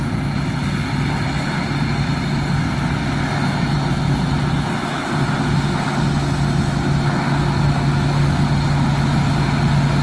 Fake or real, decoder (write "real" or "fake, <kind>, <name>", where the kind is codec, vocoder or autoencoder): real